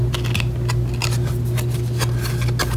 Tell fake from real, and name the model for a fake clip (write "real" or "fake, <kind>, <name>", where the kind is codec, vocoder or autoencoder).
real